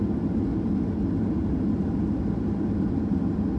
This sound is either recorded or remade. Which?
recorded